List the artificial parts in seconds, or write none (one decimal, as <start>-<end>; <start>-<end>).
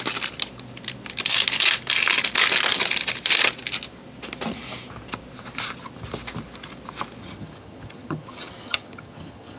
7.2-9.6